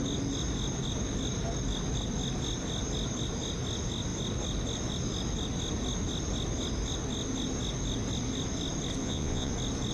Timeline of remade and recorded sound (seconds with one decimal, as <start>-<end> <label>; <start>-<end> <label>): 0.0-9.0 recorded; 9.0-9.5 remade; 9.5-9.9 recorded